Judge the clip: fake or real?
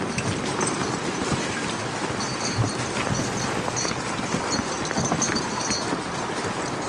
real